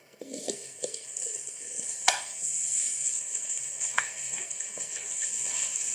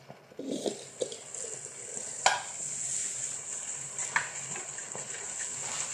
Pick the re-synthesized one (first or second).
first